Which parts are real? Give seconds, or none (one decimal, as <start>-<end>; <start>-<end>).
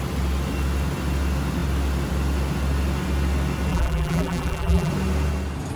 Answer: 0.0-3.7; 4.9-5.8